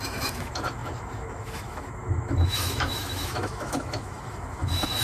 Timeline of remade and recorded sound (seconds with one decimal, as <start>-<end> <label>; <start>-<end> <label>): 0.0-5.0 remade

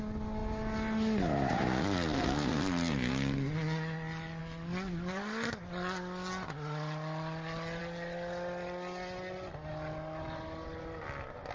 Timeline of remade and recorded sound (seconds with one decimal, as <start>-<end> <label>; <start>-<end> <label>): 0.0-11.5 recorded

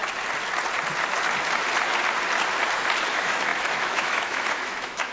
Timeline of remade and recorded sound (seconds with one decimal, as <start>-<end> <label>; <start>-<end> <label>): 0.0-3.1 recorded; 3.1-5.1 remade